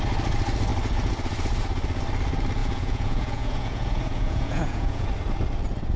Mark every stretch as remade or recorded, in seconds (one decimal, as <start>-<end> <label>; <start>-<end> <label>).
0.0-2.6 recorded; 2.6-5.1 remade; 5.1-6.0 recorded